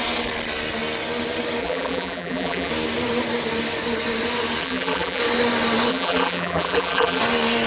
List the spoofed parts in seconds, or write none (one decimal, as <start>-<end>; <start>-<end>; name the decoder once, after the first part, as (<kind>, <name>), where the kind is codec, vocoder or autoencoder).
1.6-2.7 (vocoder, BigVGAN v2); 4.6-5.2; 5.9-7.2